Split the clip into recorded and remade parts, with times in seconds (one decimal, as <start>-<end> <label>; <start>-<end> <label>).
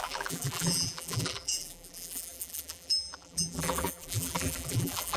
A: 0.0-5.2 remade